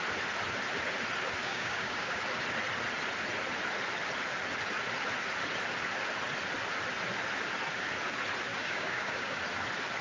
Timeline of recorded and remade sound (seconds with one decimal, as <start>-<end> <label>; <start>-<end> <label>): 0.0-1.4 recorded; 1.4-2.2 remade; 2.2-8.5 recorded; 8.5-9.4 remade; 9.4-10.0 recorded